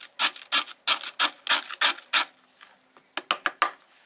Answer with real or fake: real